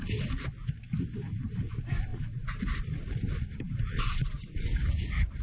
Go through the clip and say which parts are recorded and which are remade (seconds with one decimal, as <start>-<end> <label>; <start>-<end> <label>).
0.0-2.1 recorded; 2.1-5.4 remade